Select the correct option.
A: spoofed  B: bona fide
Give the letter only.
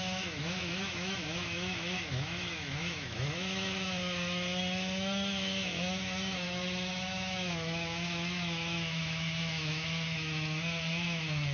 A